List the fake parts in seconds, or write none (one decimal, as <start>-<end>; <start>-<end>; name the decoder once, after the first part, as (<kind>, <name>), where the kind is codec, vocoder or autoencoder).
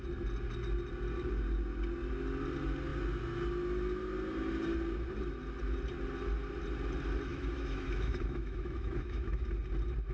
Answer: 7.3-9.4 (autoencoder, DAC-VAE)